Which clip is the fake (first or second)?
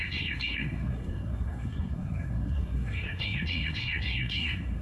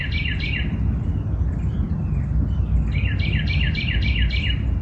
first